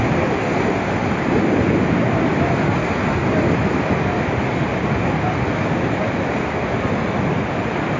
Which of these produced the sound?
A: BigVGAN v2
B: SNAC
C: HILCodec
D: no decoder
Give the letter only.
D